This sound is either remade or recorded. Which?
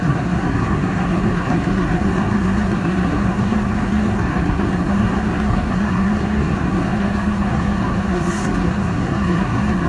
remade